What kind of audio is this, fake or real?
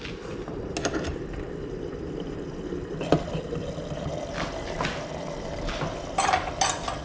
real